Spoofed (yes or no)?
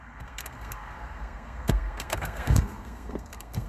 yes